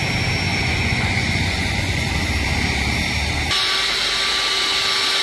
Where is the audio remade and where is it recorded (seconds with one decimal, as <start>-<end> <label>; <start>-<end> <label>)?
0.0-0.5 recorded; 0.5-2.1 remade; 2.1-5.2 recorded